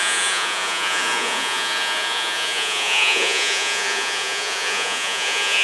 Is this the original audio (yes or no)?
no